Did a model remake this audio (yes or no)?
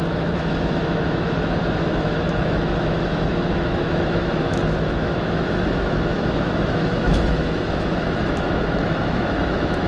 yes